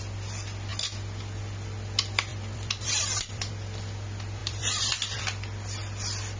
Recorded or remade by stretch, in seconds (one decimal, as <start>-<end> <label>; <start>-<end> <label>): 0.0-2.3 recorded; 2.3-3.5 remade; 3.5-4.4 recorded; 4.4-5.2 remade; 5.2-6.4 recorded